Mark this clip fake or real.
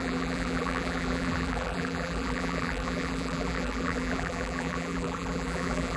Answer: fake